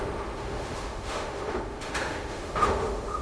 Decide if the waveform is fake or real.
fake